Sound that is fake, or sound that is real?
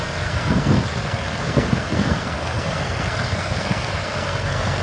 fake